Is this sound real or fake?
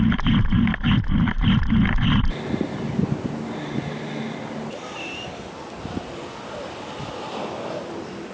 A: real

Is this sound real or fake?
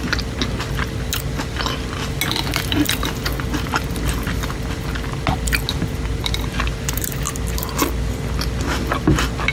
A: real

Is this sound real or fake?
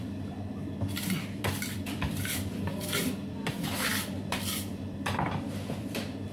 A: fake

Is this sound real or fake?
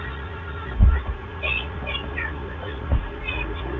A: fake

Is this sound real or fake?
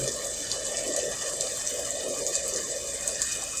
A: real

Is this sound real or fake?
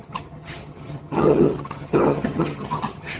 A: fake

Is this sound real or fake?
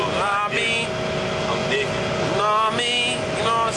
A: real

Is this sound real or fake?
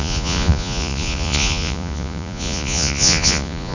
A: fake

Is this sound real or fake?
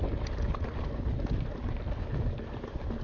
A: real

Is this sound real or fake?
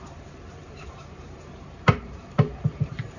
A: fake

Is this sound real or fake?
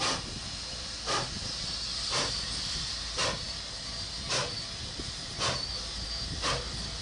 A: real